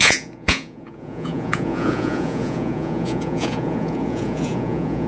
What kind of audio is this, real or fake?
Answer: fake